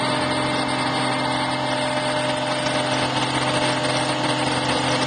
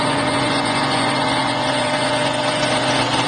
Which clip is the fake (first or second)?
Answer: second